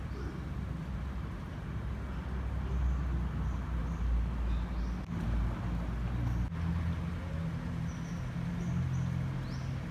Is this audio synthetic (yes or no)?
no